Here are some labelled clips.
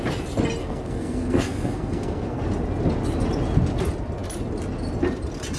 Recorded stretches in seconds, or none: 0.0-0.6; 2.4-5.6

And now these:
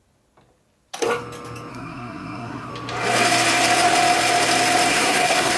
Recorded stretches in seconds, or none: 0.0-1.7; 2.7-4.9

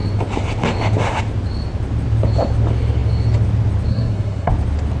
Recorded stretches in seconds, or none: 0.0-3.9; 4.5-5.0

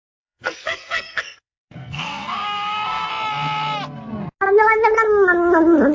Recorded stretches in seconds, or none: 3.1-5.9